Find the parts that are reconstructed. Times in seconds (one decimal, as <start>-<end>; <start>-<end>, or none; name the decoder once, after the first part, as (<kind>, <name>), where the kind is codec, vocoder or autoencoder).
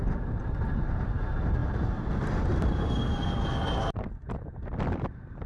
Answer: 0.0-1.6 (vocoder, BigVGAN v2); 4.9-5.5